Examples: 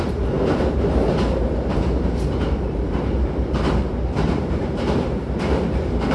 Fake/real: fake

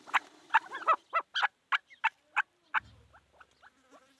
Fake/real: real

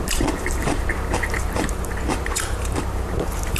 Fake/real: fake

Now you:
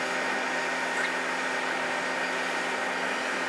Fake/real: real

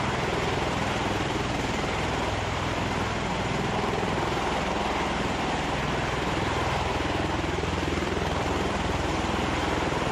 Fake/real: fake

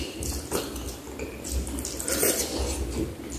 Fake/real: real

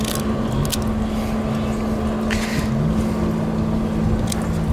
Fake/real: real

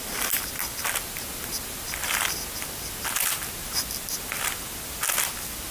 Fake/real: real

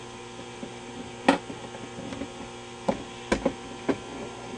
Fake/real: real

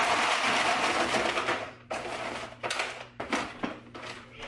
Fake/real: fake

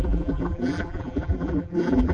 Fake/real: fake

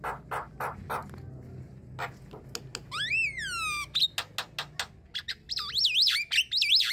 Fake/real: real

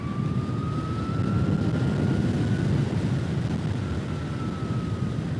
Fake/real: real